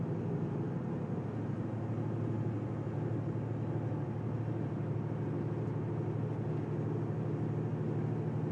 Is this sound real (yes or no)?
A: yes